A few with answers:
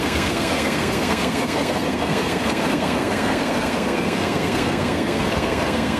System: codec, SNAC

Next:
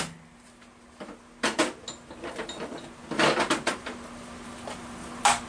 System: none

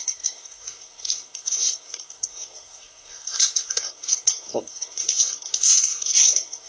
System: codec, SNAC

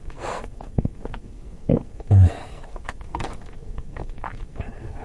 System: codec, SNAC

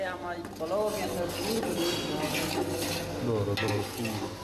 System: none